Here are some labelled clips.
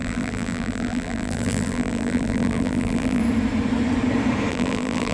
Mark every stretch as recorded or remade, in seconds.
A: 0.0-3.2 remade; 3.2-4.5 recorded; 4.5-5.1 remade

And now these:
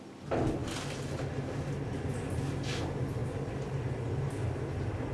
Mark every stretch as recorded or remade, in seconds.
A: 0.0-5.1 recorded

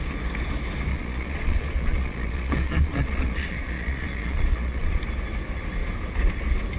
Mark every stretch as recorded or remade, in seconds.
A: 0.0-0.9 recorded; 0.9-5.0 remade; 5.0-6.8 recorded

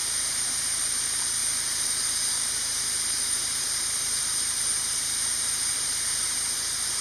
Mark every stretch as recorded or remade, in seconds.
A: 0.0-0.6 recorded; 0.6-1.4 remade; 1.4-2.0 recorded; 2.0-7.0 remade

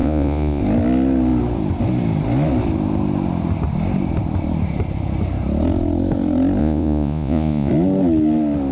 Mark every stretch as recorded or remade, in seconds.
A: 0.0-0.6 remade; 0.6-6.6 recorded; 6.6-7.7 remade; 7.7-8.7 recorded

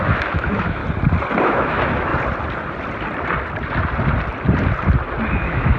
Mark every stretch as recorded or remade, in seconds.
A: 0.0-0.8 remade; 0.8-1.4 recorded; 1.4-2.1 remade; 2.1-5.3 recorded; 5.3-5.8 remade

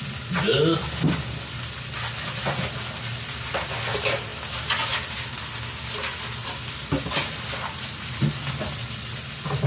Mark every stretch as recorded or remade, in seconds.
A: 0.0-7.2 recorded; 7.2-8.2 remade; 8.2-9.7 recorded

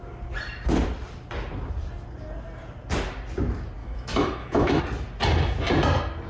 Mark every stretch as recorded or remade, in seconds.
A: 0.0-3.8 recorded; 3.8-4.8 remade; 4.8-6.3 recorded